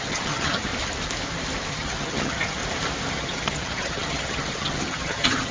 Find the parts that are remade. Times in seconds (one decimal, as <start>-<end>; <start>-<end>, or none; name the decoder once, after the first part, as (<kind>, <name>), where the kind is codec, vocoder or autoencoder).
0.0-0.7 (vocoder, HiFi-GAN); 1.7-2.6; 3.1-5.5